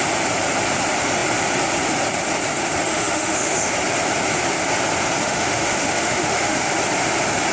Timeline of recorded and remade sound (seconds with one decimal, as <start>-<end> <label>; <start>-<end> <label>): 0.0-2.9 recorded; 2.9-3.7 remade; 3.7-5.2 recorded; 5.2-6.7 remade; 6.7-7.5 recorded